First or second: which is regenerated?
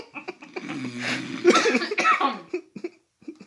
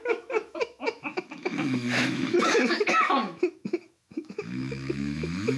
second